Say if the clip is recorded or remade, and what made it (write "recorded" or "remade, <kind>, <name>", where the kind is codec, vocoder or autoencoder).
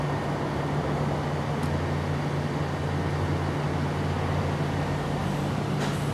recorded